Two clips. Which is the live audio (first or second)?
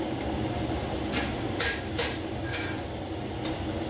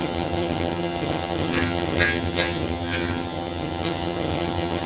first